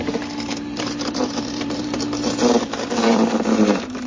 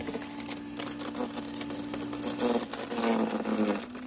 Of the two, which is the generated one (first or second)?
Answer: first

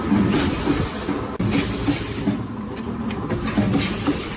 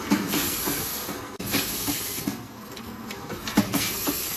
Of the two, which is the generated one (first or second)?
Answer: second